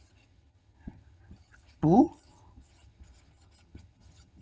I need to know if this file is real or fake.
fake